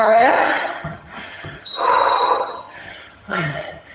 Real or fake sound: fake